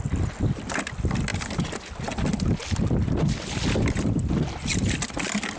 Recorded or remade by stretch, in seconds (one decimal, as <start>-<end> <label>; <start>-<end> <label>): 0.0-5.6 recorded